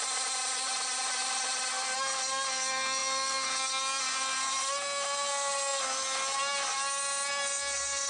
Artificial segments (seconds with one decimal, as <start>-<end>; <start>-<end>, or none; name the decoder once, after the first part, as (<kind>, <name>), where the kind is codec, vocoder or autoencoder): none